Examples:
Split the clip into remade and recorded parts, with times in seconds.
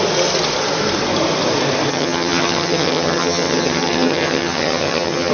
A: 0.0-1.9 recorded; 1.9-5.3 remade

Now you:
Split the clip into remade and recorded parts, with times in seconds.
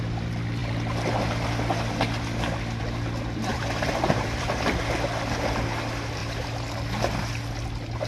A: 0.0-3.5 recorded; 3.5-4.7 remade; 4.7-8.1 recorded